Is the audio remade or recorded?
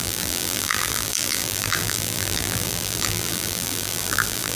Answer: remade